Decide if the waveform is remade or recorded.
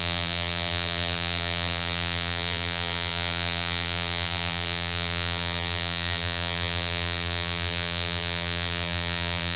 remade